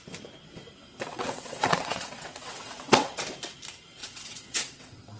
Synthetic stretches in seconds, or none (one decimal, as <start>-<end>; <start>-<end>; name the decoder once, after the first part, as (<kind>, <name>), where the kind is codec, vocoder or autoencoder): 0.8-3.2 (vocoder, WaveNeXt); 4.0-5.2